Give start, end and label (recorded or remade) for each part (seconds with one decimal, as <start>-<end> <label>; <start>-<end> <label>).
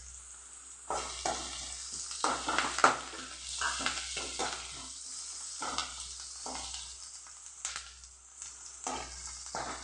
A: 0.0-9.8 recorded